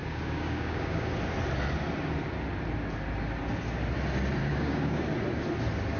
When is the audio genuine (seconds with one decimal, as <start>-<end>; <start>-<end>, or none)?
1.1-4.4; 5.0-6.0